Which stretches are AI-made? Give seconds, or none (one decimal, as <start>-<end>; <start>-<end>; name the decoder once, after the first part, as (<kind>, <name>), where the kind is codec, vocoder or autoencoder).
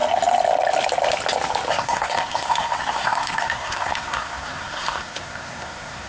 1.7-6.1 (codec, SNAC)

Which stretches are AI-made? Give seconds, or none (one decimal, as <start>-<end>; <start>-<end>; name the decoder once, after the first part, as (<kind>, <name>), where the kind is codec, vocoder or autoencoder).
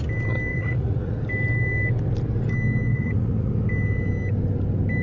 0.5-1.2 (vocoder, Vocos); 2.9-3.5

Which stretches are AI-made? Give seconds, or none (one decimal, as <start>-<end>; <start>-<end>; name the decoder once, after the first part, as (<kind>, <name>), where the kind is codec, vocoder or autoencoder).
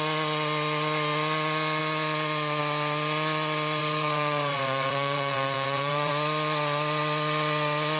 3.8-6.1 (vocoder, WaveNeXt)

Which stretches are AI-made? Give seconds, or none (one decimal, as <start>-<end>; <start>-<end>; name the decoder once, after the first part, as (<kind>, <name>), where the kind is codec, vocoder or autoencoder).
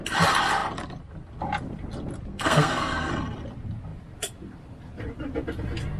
2.3-3.1 (codec, SNAC)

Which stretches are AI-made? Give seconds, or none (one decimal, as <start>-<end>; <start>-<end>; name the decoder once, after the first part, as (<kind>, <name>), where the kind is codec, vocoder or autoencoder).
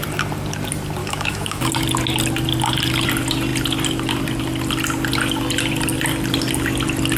1.0-1.7 (autoencoder, DAC-VAE)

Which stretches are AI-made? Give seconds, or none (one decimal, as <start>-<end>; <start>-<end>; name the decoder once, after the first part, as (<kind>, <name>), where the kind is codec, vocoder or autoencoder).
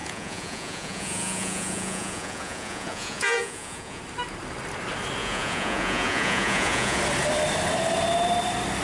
0.0-4.0 (vocoder, Vocos); 5.2-7.0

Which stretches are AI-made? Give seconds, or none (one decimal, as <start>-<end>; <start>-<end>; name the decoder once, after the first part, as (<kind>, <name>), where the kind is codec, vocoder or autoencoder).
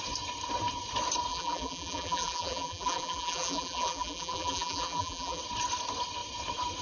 1.3-5.4 (vocoder, BigVGAN v2)